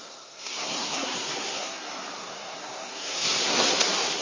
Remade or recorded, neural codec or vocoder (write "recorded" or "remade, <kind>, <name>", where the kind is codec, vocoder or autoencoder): remade, codec, SNAC